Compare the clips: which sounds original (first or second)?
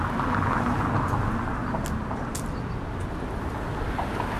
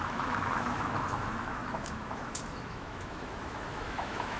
first